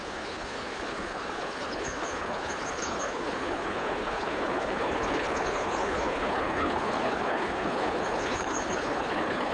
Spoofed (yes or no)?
yes